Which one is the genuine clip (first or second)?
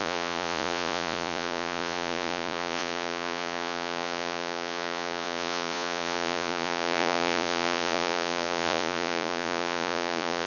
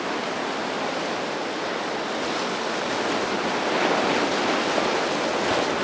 second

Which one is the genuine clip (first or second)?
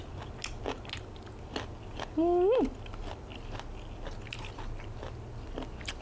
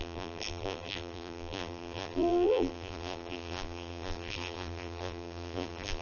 first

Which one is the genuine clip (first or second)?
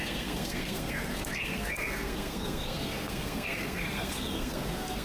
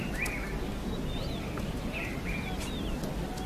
second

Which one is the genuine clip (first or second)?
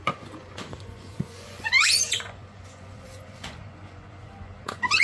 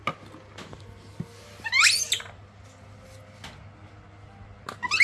second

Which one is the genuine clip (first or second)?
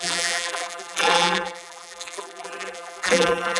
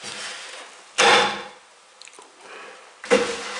second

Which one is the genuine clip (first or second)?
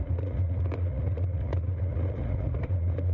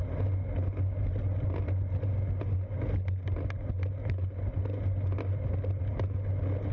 second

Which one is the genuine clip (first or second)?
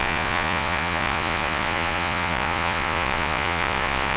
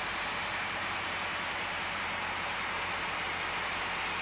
second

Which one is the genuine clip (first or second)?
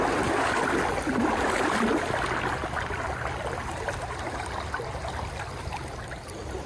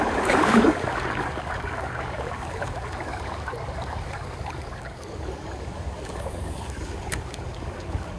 first